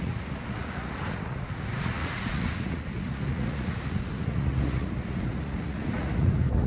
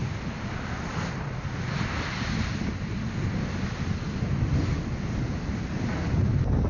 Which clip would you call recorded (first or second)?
second